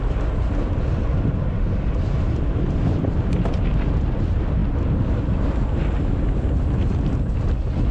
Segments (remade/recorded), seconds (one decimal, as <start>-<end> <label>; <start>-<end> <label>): 0.0-7.9 recorded